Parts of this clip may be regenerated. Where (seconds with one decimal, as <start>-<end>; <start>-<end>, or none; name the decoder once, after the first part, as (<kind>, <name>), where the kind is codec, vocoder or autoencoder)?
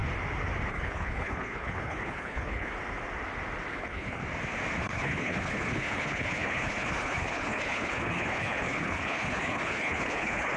0.7-2.7 (codec, HILCodec); 3.7-4.2; 4.8-10.6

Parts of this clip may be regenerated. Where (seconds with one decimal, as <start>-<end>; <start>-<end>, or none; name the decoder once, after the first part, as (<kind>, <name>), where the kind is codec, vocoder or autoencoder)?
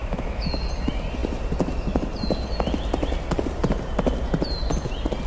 0.0-0.6 (autoencoder, DAC-VAE)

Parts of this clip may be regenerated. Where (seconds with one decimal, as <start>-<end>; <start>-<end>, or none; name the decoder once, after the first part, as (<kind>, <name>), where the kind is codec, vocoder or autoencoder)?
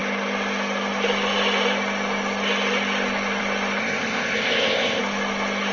3.8-5.0 (codec, ZipCodec)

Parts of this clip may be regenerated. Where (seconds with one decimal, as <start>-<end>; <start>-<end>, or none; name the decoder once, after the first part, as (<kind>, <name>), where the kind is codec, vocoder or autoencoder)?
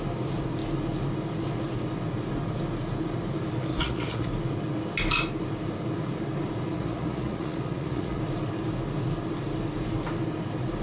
3.7-4.3 (vocoder, Vocos); 6.7-8.2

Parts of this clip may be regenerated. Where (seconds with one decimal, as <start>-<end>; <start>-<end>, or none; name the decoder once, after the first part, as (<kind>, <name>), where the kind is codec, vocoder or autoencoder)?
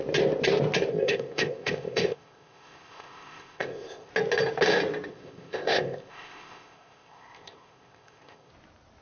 0.9-4.1 (codec, ZipCodec); 5.1-8.5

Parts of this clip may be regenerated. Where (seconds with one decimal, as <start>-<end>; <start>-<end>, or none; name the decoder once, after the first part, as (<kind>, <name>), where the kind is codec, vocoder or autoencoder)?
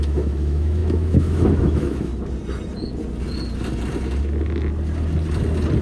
0.0-2.1 (autoencoder, DAC-VAE)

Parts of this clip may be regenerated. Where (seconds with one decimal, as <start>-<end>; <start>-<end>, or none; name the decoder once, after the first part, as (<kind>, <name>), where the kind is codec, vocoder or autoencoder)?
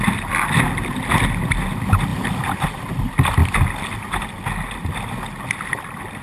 none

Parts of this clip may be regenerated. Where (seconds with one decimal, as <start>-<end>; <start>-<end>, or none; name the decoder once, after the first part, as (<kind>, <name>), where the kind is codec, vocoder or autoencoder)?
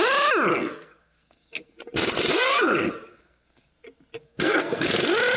0.5-1.7 (codec, SNAC); 2.3-3.7; 4.2-5.0